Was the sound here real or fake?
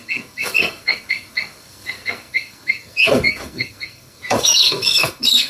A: fake